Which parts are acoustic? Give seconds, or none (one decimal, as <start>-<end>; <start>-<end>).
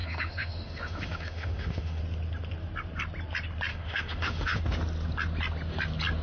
2.0-3.7; 4.6-6.2